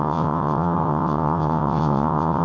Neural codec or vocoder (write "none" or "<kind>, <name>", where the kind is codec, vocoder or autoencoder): vocoder, WaveNeXt